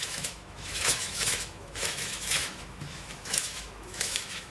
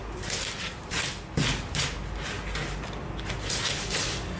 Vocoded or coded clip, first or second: first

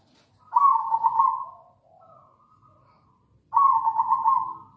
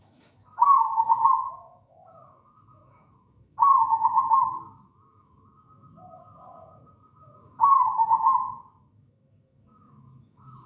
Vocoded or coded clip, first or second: second